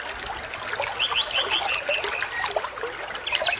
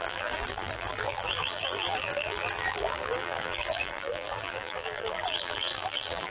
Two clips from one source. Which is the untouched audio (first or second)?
first